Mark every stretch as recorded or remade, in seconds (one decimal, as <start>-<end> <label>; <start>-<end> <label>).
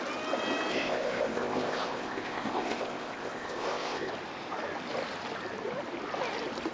0.0-0.7 recorded; 0.7-4.1 remade; 4.1-6.7 recorded